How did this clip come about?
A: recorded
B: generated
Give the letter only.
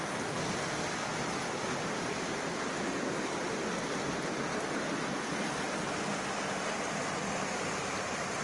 A